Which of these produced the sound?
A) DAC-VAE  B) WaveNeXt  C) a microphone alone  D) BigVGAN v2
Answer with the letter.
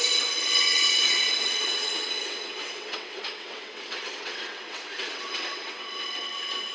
B